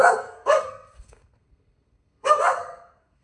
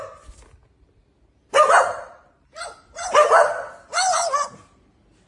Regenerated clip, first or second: first